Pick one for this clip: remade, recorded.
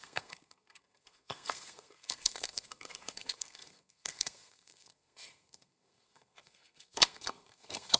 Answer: remade